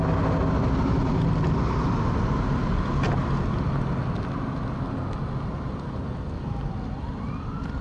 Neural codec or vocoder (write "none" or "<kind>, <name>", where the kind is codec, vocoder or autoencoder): none